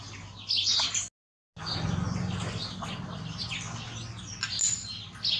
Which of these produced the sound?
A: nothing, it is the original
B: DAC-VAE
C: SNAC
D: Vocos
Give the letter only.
A